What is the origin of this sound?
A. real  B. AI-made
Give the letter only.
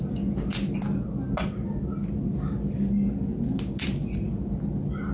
A